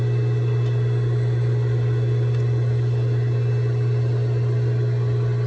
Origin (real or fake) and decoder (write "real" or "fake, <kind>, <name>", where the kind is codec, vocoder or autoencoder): real